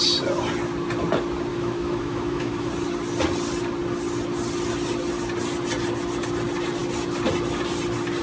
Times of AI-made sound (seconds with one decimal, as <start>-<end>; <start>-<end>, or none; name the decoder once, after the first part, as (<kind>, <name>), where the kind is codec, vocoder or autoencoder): 1.5-2.7 (autoencoder, DAC-VAE)